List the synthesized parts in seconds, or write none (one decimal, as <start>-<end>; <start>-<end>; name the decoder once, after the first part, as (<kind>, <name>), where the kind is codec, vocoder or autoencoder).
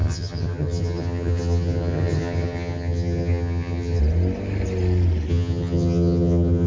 0.0-4.0 (vocoder, HiFi-GAN); 5.3-6.7